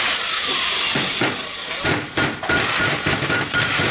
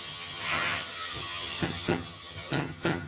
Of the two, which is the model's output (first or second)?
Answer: second